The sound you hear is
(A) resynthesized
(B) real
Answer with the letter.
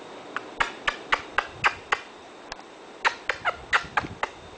B